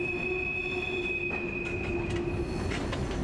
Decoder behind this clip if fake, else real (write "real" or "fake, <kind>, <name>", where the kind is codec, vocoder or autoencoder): real